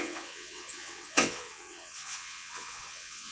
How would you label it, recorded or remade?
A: remade